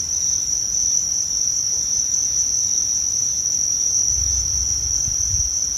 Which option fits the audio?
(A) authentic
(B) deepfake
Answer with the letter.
A